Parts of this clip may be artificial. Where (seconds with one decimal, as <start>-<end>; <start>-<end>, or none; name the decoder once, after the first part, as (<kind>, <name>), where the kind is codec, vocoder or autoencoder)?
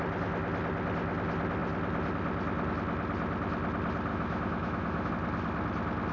4.1-5.1 (autoencoder, DAC-VAE)